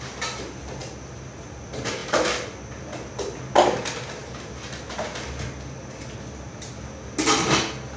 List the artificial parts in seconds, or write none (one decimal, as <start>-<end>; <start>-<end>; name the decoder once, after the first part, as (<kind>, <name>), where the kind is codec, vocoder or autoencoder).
none